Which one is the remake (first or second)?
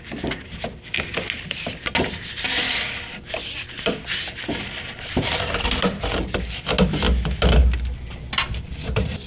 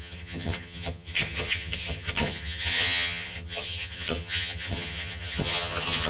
second